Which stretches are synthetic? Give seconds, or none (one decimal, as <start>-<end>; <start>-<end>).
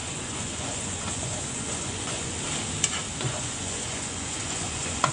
0.0-2.3; 3.1-5.1